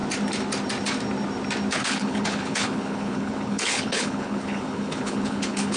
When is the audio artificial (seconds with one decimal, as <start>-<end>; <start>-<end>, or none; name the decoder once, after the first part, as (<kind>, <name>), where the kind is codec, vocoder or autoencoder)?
1.7-5.8 (codec, HILCodec)